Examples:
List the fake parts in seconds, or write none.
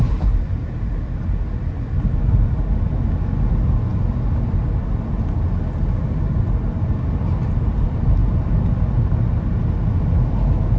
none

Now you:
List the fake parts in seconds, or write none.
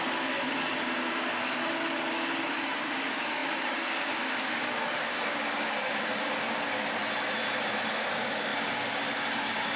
0.0-7.0 (codec, DAC); 7.9-9.8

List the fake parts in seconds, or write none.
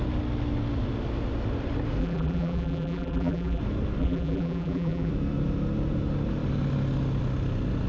2.0-3.6 (vocoder, BigVGAN v2); 4.0-5.1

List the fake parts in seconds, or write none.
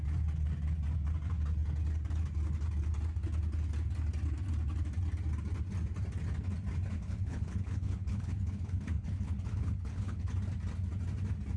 6.9-10.3 (codec, HILCodec)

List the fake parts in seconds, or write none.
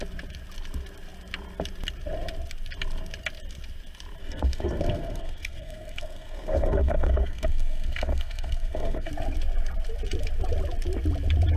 4.2-9.1 (codec, SNAC)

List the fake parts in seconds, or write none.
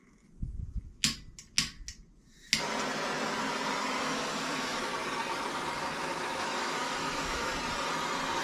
4.0-4.9 (autoencoder, DAC-VAE); 6.0-7.5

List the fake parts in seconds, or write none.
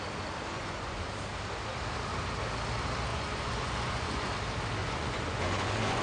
0.5-1.0 (vocoder, Vocos); 3.1-4.3; 4.8-6.0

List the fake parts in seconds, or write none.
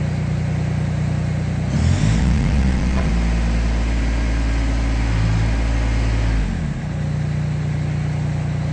2.2-3.1 (vocoder, Vocos)